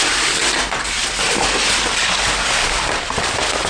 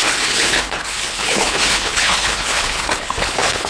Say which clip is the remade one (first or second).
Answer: second